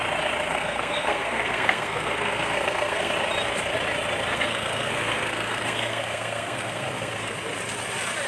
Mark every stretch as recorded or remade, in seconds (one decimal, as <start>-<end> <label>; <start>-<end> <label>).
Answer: 0.0-0.5 recorded; 0.5-3.1 remade; 3.1-4.3 recorded; 4.3-7.3 remade; 7.3-8.3 recorded